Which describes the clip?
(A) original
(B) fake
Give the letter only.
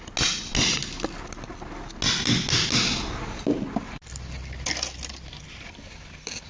A